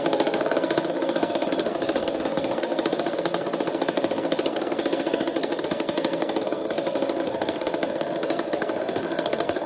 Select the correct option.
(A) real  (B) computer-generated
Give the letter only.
B